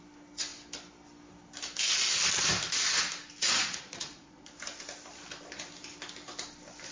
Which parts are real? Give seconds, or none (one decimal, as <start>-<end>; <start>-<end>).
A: 0.0-3.4; 4.5-6.9